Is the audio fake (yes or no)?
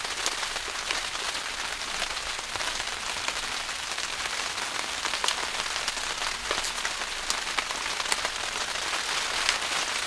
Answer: no